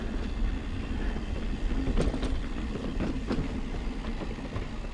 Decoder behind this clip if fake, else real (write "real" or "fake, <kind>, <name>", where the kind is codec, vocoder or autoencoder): real